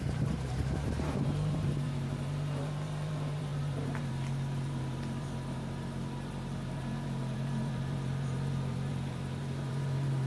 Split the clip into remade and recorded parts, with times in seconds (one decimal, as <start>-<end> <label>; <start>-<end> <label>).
0.0-10.3 remade